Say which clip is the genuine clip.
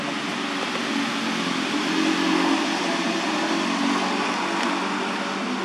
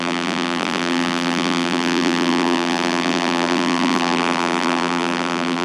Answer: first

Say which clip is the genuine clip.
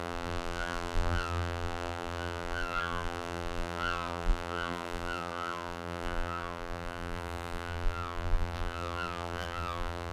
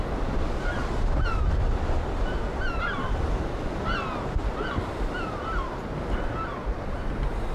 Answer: second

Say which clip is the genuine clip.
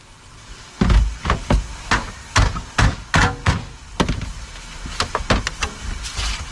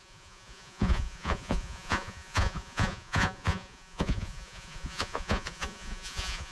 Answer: first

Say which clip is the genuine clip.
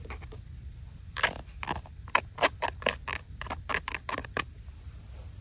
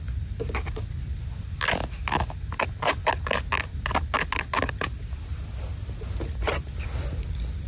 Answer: second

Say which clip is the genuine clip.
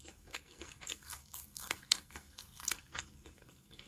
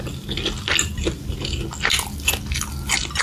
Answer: second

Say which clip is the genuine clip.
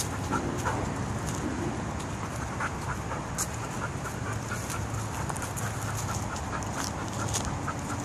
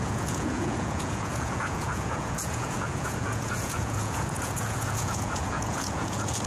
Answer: first